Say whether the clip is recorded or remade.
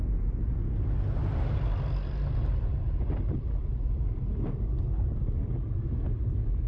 recorded